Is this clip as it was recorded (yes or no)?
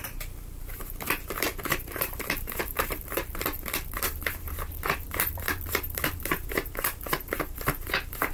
no